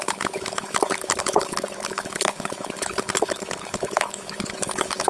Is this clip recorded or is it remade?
remade